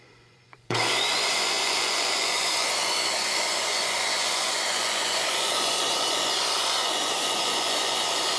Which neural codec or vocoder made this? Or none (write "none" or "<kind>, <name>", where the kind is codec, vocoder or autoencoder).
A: vocoder, Vocos